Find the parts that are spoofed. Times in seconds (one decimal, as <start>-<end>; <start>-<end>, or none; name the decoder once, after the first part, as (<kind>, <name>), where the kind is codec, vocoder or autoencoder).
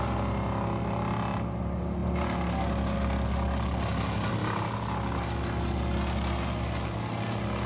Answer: none